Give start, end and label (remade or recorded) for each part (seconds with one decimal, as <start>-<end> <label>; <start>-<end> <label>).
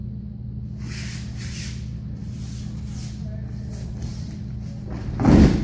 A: 0.0-5.6 recorded